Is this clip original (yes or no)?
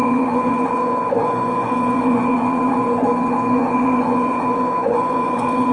no